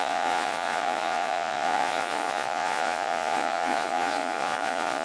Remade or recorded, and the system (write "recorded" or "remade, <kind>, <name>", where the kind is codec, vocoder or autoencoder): remade, vocoder, Vocos